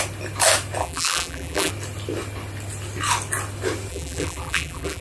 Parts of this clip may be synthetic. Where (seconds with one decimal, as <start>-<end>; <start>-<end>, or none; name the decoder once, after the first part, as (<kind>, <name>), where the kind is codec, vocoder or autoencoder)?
0.8-1.7 (vocoder, BigVGAN v2); 3.9-5.0